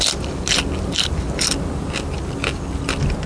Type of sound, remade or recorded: recorded